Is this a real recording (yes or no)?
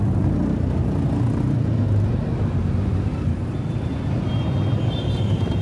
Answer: yes